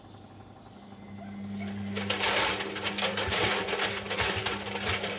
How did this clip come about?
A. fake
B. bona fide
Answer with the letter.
B